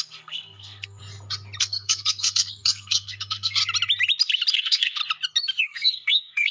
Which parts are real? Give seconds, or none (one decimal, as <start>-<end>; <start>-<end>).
1.0-1.6; 3.6-4.5; 5.0-5.6